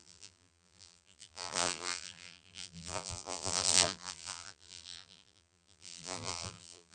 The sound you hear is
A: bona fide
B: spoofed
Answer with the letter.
B